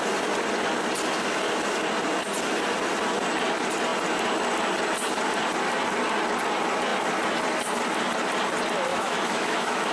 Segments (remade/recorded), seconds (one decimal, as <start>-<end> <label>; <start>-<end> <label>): 0.0-8.9 recorded; 8.9-9.9 remade

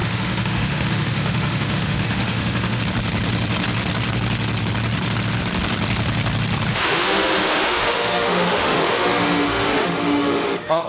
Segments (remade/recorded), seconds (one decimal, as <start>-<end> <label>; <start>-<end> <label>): 0.0-2.8 remade; 2.8-6.7 recorded; 6.7-10.9 remade

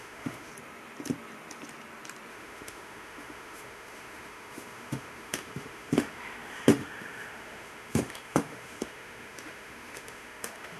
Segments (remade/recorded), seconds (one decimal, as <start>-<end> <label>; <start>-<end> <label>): 0.0-0.5 remade; 0.5-2.3 recorded; 2.3-10.8 remade

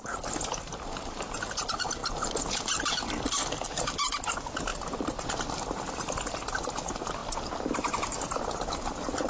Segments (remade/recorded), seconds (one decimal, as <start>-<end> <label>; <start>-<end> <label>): 0.0-9.3 recorded